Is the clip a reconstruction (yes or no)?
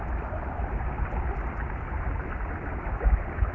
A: no